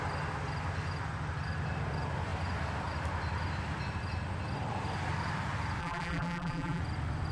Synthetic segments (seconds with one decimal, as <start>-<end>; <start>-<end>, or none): 5.8-6.8